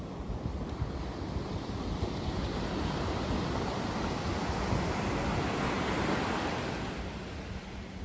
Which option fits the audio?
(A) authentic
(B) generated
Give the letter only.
A